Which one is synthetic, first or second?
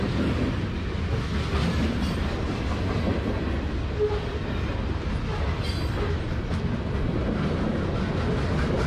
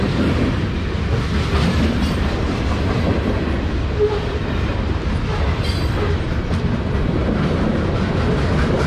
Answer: second